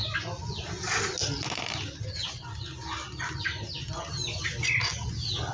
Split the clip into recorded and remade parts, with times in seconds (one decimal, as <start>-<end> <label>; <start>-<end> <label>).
0.0-5.5 recorded